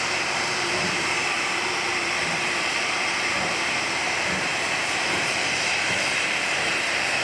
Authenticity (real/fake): fake